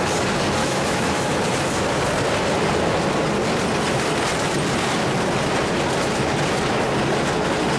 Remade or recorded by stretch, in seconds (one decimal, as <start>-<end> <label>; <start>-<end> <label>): 0.0-0.6 recorded; 0.6-1.2 remade; 1.2-7.8 recorded